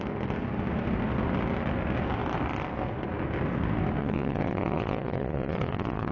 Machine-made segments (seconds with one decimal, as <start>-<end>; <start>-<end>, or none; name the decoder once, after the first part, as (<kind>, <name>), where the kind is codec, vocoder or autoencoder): 4.0-6.1 (vocoder, WaveNeXt)